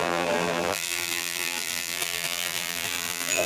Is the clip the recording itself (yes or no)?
no